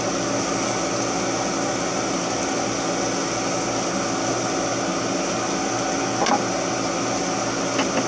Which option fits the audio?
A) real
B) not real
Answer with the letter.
A